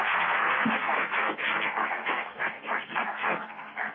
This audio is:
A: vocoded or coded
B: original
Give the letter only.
A